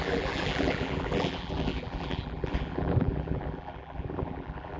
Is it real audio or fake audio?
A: fake